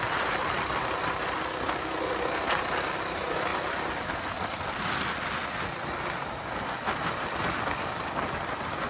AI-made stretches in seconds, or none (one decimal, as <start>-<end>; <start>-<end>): none